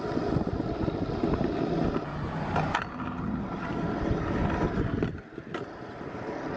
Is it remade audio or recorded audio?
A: recorded